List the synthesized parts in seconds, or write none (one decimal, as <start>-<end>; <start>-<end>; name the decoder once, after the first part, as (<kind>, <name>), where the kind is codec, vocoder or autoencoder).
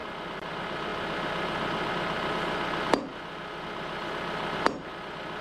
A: 0.0-0.5 (vocoder, BigVGAN v2)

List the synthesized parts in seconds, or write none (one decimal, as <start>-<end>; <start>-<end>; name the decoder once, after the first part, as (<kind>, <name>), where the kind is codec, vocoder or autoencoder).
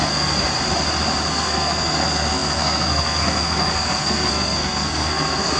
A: 0.0-0.5 (codec, SNAC); 1.3-5.6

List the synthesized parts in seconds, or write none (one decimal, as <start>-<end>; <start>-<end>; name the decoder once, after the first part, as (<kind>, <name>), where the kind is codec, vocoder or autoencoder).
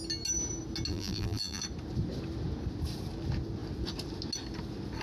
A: 0.9-1.6 (vocoder, BigVGAN v2)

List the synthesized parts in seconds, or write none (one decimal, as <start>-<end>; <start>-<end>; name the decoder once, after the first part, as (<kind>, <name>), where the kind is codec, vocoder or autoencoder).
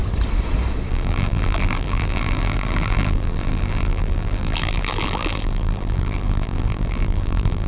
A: 0.9-7.7 (vocoder, BigVGAN v2)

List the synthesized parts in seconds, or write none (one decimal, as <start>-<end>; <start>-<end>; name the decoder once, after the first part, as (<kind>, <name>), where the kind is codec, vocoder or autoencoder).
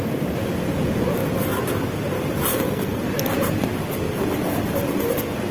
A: 2.5-3.0 (codec, SNAC)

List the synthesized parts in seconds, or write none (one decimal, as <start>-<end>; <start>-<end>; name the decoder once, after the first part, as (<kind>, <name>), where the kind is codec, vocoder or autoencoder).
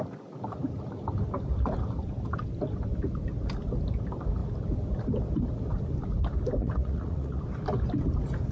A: 6.6-7.4 (vocoder, Vocos)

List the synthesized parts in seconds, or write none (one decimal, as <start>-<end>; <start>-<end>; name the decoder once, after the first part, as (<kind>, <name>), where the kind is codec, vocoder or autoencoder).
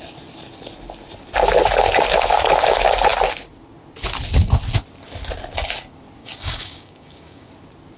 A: 6.2-7.5 (codec, DAC)